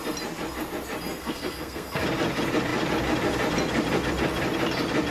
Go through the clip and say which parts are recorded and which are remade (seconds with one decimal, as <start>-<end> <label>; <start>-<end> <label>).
0.0-1.2 recorded; 1.2-2.0 remade; 2.0-5.1 recorded